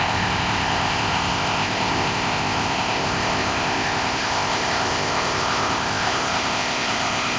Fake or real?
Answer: fake